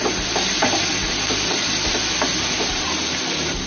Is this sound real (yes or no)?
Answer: yes